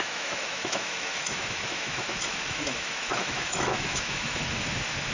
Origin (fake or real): fake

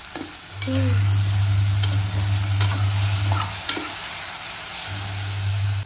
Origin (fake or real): real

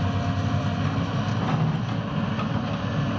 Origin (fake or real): real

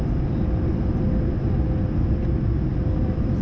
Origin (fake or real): real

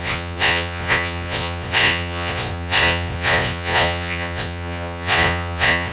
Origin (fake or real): fake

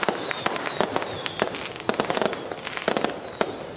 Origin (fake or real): real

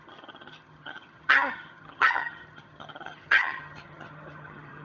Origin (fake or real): fake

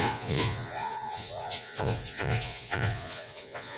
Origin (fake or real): fake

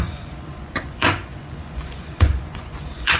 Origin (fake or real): fake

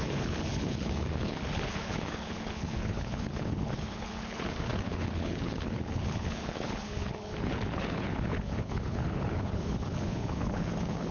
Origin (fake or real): fake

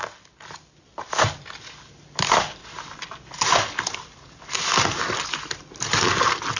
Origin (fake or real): real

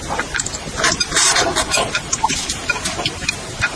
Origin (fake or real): fake